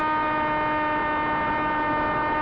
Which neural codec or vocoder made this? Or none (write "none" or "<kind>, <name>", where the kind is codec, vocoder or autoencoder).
none